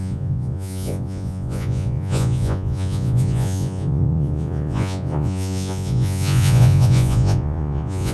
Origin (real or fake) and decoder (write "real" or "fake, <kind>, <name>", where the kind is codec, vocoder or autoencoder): fake, vocoder, Vocos